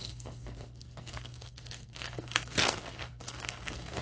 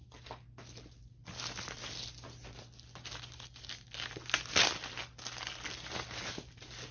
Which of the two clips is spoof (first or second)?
first